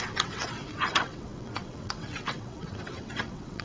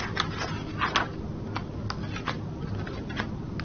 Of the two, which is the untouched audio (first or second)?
second